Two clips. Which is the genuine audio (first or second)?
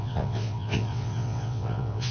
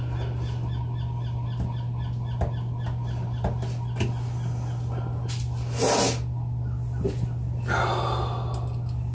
second